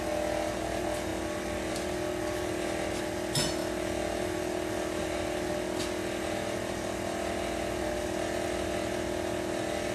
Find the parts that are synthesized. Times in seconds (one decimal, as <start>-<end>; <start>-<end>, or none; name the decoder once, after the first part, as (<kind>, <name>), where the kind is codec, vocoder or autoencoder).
none